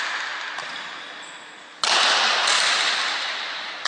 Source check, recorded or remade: recorded